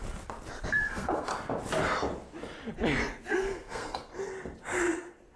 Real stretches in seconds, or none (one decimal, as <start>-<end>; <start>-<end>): 0.0-0.7; 1.3-3.3; 4.1-5.4